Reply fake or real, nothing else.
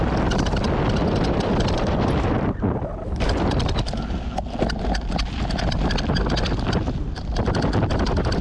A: real